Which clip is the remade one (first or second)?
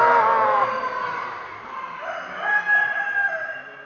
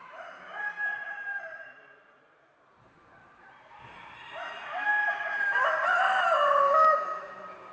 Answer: second